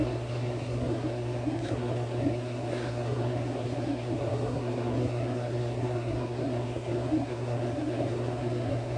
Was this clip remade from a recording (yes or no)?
yes